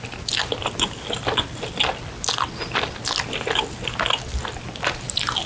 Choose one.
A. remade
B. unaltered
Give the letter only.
B